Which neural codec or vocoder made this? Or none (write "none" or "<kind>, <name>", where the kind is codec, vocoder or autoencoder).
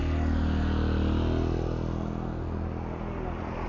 none